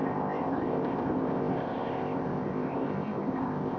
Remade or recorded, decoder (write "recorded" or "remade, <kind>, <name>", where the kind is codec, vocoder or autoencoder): remade, codec, ZipCodec